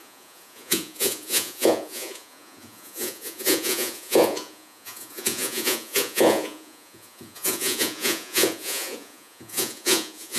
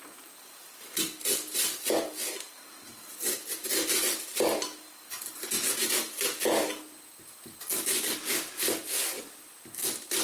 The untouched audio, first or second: second